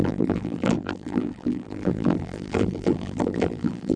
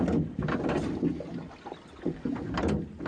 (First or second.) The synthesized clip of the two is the first